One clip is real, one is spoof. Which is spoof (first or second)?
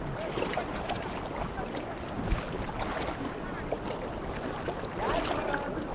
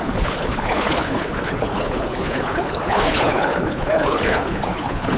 second